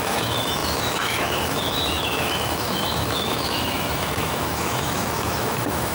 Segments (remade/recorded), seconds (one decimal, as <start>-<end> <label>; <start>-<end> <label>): 0.0-5.9 remade